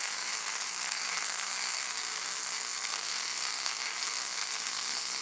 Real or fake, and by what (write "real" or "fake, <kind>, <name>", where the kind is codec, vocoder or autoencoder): fake, codec, SNAC